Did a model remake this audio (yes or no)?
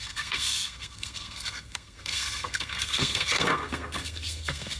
yes